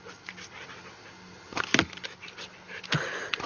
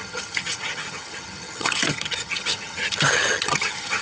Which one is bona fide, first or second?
first